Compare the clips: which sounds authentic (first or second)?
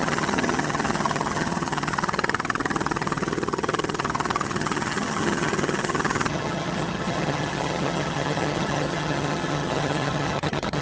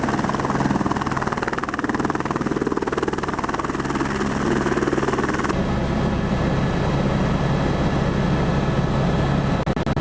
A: second